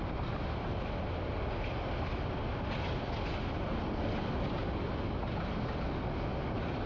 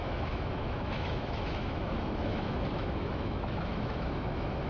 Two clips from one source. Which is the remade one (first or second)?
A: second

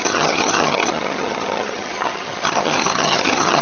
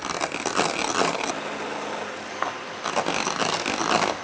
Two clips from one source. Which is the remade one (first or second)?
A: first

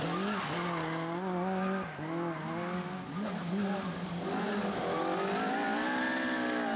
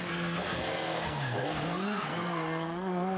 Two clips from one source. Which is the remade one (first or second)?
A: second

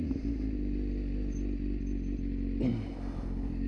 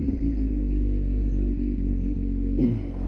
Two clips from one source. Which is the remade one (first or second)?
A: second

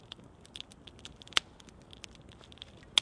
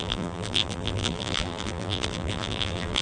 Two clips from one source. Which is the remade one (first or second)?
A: second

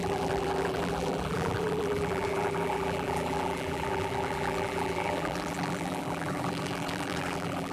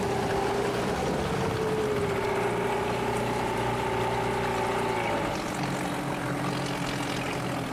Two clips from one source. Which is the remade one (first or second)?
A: first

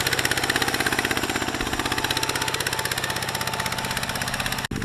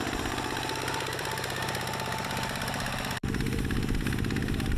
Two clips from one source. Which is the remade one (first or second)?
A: second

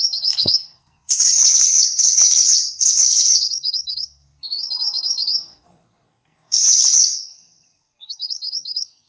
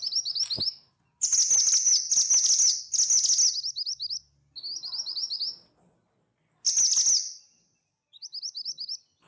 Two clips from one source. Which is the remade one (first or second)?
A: first